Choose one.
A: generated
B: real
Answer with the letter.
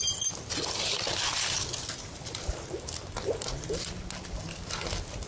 B